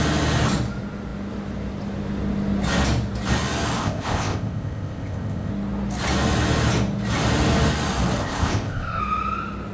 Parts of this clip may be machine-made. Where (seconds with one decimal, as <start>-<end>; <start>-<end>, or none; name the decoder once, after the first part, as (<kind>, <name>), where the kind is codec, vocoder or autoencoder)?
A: 3.8-5.5 (codec, ZipCodec); 8.2-9.0